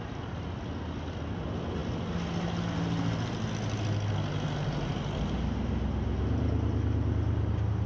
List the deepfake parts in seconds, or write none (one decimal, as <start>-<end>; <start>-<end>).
none